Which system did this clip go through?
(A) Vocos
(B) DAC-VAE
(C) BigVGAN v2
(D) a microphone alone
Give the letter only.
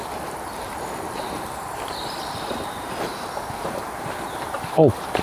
C